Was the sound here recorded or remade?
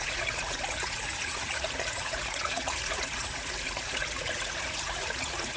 remade